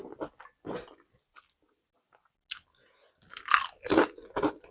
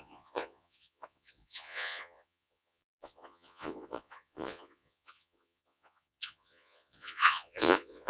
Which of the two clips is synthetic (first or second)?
second